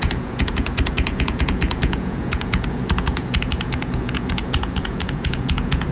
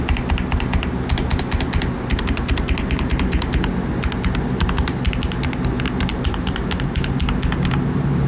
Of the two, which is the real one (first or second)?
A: second